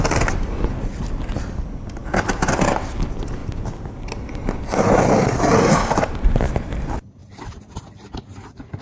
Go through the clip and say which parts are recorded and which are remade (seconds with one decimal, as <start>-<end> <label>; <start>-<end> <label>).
0.0-2.0 recorded; 2.0-2.6 remade; 2.6-3.4 recorded; 3.4-4.3 remade; 4.3-7.2 recorded; 7.2-7.8 remade; 7.8-8.8 recorded